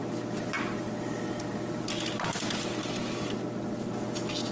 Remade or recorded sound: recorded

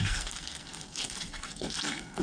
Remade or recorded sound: remade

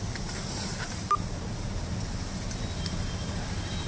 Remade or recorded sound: recorded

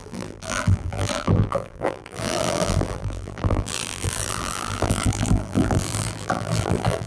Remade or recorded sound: remade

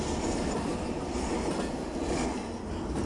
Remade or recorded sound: recorded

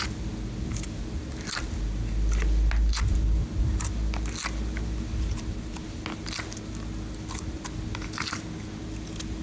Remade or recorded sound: recorded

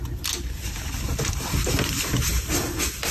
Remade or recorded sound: recorded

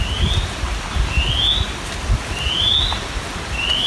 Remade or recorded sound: recorded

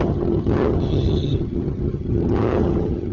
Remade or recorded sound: remade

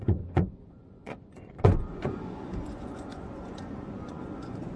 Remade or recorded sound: remade